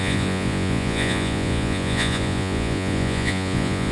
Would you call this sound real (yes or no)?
no